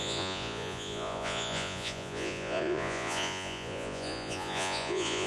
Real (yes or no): no